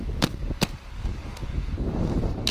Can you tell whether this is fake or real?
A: fake